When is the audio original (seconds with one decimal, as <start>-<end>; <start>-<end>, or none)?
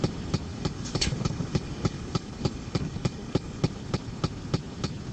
0.0-0.5; 3.6-5.1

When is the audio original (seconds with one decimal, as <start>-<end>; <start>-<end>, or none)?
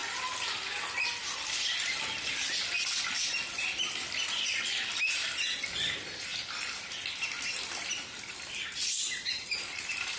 0.0-10.2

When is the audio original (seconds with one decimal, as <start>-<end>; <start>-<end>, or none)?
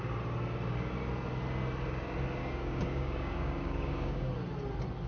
0.0-2.4; 4.3-5.1